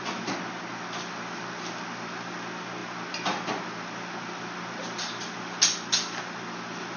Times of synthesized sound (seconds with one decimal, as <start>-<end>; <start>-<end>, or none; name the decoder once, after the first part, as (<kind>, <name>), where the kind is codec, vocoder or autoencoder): none